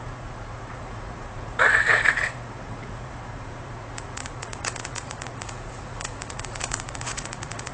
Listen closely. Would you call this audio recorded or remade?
remade